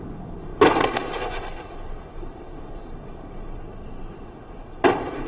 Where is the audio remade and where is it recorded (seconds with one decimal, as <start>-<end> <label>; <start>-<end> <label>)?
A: 0.0-0.5 remade; 0.5-2.7 recorded; 2.7-3.7 remade; 3.7-4.5 recorded; 4.5-5.3 remade